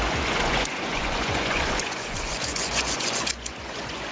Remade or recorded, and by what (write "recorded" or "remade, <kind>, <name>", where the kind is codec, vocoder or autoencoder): remade, vocoder, Vocos